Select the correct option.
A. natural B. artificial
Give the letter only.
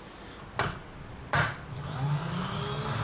A